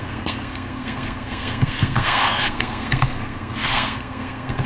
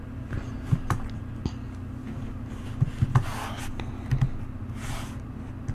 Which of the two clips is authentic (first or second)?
second